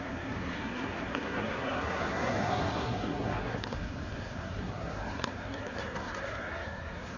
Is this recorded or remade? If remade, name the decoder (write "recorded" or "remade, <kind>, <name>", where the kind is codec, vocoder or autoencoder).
remade, codec, SNAC